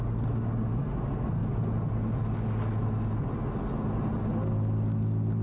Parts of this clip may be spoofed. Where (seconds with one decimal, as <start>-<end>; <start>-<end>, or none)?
none